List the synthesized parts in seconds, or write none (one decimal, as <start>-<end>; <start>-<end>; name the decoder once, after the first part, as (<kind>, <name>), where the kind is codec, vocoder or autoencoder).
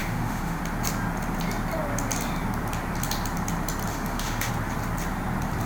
0.0-0.6 (autoencoder, DAC-VAE); 3.9-4.5